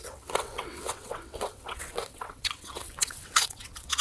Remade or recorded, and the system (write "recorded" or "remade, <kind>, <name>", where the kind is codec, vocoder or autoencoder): remade, vocoder, WaveNeXt